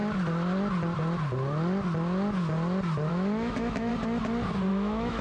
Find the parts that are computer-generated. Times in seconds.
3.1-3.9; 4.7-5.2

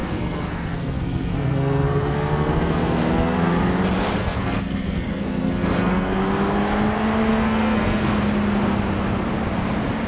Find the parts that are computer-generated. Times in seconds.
0.0-3.6; 4.2-6.2; 7.3-8.1

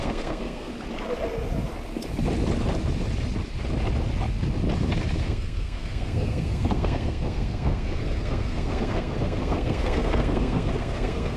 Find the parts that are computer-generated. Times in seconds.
0.0-0.7; 5.2-11.4

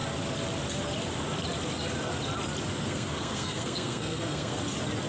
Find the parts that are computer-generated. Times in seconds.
2.8-4.6